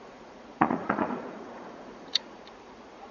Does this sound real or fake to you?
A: fake